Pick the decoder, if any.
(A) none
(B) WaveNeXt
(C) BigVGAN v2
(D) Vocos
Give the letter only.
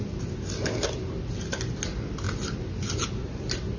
A